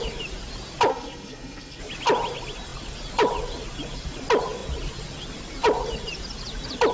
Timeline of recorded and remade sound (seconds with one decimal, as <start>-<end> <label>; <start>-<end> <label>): 0.0-0.9 recorded; 0.9-1.8 remade; 1.8-6.9 recorded